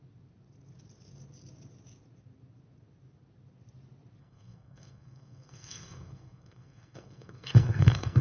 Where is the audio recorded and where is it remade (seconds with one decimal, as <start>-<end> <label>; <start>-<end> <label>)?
0.0-4.2 recorded; 4.2-8.2 remade